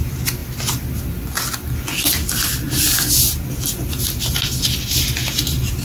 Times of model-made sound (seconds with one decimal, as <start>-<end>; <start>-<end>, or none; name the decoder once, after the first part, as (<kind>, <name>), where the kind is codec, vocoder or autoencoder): none